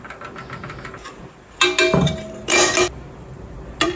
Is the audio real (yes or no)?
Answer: yes